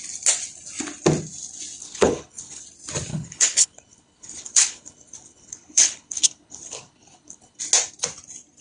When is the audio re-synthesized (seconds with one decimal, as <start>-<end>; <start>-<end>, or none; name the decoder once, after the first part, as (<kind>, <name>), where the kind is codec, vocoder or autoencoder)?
1.8-2.6 (codec, HILCodec); 3.1-7.6